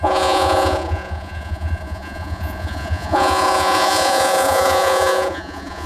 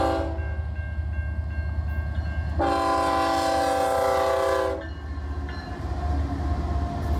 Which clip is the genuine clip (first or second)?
second